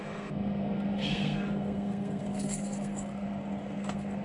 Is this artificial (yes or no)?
yes